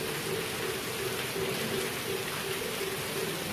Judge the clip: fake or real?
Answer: real